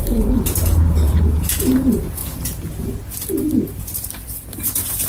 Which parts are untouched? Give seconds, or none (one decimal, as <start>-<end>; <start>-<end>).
2.2-3.8